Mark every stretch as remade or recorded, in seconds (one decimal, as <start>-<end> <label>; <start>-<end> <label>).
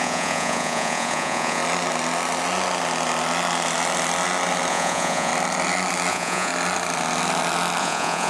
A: 0.0-1.6 remade; 1.6-4.7 recorded; 4.7-5.3 remade; 5.3-6.1 recorded; 6.1-6.5 remade; 6.5-7.8 recorded; 7.8-8.3 remade